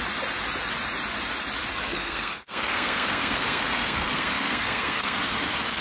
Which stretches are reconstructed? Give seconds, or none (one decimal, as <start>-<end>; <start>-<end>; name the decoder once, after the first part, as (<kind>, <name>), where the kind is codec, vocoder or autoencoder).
1.7-5.2 (codec, SNAC)